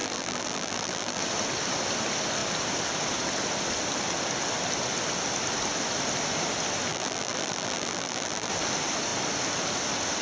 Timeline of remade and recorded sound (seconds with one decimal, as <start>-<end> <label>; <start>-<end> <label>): 0.0-1.2 remade; 1.2-6.9 recorded; 6.9-8.5 remade; 8.5-10.2 recorded